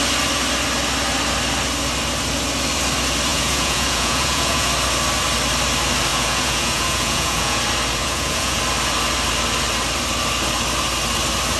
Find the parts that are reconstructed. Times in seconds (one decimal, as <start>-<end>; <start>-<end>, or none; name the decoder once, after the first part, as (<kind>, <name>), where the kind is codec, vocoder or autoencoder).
3.3-4.7 (vocoder, Vocos); 6.1-7.6; 8.0-8.6